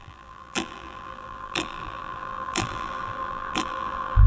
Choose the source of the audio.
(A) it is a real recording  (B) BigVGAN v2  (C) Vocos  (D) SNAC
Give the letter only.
B